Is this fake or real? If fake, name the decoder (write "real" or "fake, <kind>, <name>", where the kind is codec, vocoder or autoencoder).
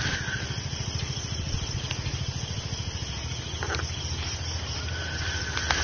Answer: real